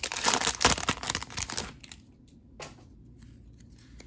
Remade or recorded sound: recorded